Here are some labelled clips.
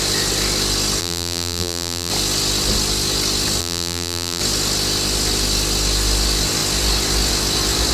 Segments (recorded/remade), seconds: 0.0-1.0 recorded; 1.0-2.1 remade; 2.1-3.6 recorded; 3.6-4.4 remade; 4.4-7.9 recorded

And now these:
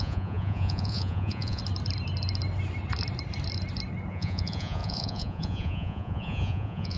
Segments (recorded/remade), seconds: 0.0-1.6 remade; 1.6-4.1 recorded; 4.1-7.0 remade